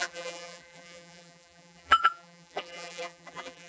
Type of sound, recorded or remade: remade